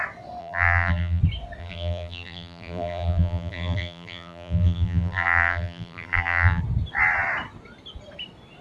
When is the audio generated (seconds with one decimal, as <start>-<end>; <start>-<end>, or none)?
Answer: 0.4-1.2; 1.6-6.6